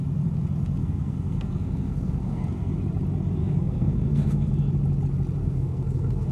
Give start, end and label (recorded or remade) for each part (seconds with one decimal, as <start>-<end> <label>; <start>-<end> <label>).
0.0-0.8 recorded; 0.8-2.8 remade; 2.8-3.4 recorded; 3.4-4.5 remade; 4.5-5.4 recorded; 5.4-6.3 remade